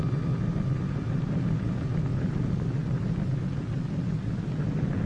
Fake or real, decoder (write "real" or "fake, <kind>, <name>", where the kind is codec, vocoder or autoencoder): real